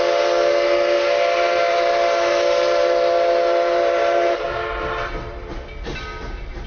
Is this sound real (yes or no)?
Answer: yes